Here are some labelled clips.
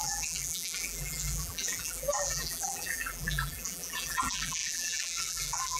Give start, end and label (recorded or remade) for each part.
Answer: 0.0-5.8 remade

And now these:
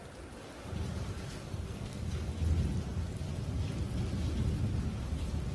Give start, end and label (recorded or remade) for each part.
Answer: 0.0-1.5 recorded; 1.5-2.3 remade; 2.3-5.5 recorded

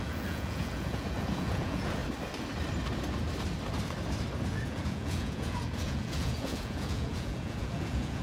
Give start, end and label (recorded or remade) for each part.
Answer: 0.0-2.0 remade; 2.0-4.5 recorded; 4.5-8.2 remade

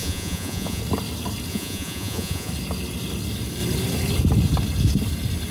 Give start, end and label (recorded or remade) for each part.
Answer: 0.0-0.8 remade; 0.8-1.5 recorded; 1.5-2.5 remade; 2.5-5.5 recorded

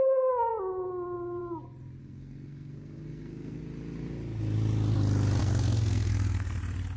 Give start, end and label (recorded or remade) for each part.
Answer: 0.0-2.0 recorded; 2.0-3.6 remade; 3.6-5.4 recorded; 5.4-6.6 remade; 6.6-7.0 recorded

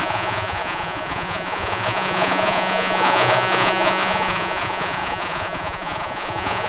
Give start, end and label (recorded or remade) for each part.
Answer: 0.0-6.7 remade

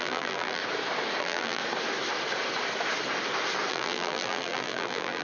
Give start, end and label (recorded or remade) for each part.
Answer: 0.0-0.6 remade; 0.6-1.2 recorded; 1.2-1.6 remade; 1.6-3.7 recorded; 3.7-5.2 remade